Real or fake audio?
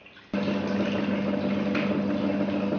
real